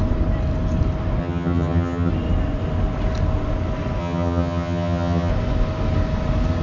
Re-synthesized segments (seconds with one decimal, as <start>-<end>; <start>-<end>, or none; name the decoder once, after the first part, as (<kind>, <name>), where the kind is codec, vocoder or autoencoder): 1.2-2.1 (vocoder, HiFi-GAN); 4.0-5.3

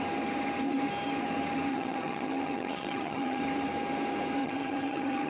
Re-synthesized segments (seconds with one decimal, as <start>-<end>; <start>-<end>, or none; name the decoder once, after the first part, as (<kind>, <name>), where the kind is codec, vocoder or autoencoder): 1.7-3.4 (vocoder, HiFi-GAN); 4.4-5.3

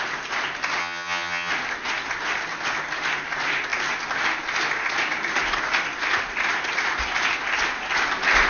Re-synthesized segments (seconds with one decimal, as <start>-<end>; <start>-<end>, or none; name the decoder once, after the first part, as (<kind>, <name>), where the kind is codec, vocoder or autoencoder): 0.8-1.5 (vocoder, HiFi-GAN)